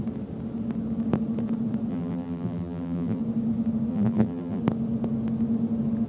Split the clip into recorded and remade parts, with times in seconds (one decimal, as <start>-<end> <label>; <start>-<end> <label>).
0.0-1.9 recorded; 1.9-3.2 remade; 3.2-3.9 recorded; 3.9-4.6 remade; 4.6-6.1 recorded